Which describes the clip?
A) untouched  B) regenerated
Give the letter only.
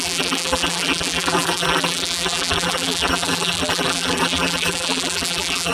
B